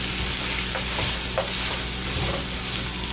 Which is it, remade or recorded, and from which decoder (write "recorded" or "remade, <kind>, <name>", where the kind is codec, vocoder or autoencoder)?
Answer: recorded